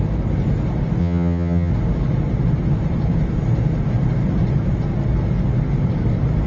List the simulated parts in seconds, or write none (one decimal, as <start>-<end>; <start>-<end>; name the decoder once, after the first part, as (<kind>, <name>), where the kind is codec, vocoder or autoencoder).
1.0-1.7 (vocoder, HiFi-GAN)